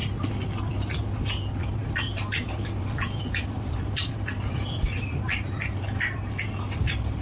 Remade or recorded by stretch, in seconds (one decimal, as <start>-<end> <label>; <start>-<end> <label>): 0.0-7.2 recorded